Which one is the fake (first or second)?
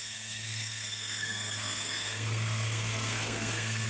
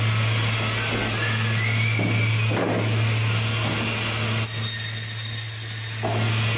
first